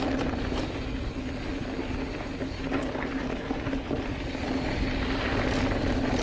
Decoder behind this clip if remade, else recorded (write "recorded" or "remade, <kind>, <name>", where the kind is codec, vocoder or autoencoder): recorded